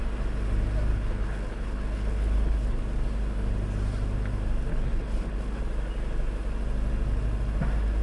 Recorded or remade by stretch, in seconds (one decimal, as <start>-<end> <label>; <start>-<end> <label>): 0.0-0.9 recorded; 0.9-2.8 remade; 2.8-4.7 recorded; 4.7-5.6 remade; 5.6-8.0 recorded

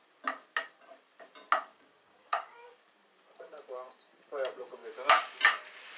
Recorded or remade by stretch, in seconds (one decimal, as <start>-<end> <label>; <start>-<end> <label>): 0.0-1.7 recorded; 1.7-2.8 remade; 2.8-6.0 recorded

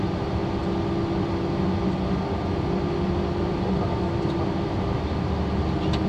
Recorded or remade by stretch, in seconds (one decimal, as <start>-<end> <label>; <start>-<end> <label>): 0.0-6.1 recorded